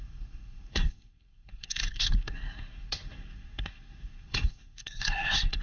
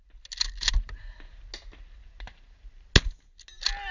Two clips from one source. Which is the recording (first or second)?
second